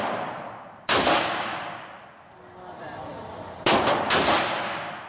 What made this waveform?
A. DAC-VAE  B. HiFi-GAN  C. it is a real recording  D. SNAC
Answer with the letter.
C